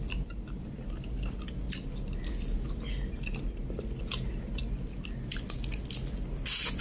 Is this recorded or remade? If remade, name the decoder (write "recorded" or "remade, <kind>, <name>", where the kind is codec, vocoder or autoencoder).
recorded